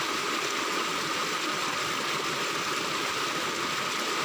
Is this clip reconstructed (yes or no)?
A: yes